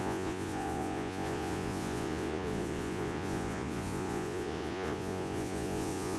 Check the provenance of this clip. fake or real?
fake